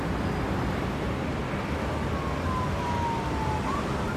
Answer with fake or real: real